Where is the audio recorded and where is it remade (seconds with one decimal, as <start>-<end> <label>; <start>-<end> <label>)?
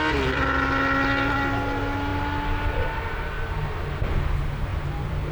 0.0-4.7 recorded; 4.7-5.3 remade